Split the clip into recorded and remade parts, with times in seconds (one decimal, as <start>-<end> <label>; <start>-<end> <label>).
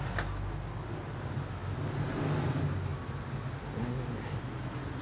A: 0.0-5.0 recorded